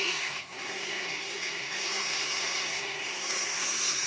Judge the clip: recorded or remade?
remade